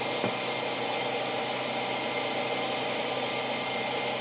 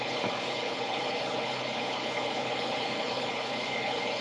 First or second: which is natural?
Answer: first